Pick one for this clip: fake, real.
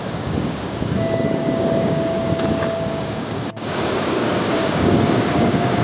fake